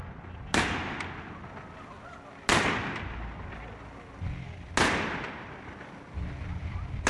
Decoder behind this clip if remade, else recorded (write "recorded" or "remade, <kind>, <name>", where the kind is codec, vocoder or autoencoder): recorded